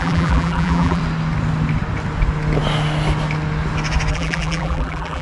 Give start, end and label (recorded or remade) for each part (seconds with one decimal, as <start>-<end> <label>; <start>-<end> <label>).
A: 0.0-1.0 remade; 1.0-4.1 recorded; 4.1-5.2 remade